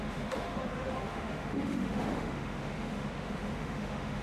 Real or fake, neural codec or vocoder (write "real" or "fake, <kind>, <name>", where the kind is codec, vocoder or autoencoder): fake, autoencoder, DAC-VAE